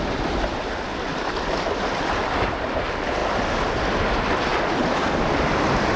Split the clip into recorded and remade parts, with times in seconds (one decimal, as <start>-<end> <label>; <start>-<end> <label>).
0.0-1.1 recorded; 1.1-2.0 remade; 2.0-3.2 recorded; 3.2-3.8 remade; 3.8-6.0 recorded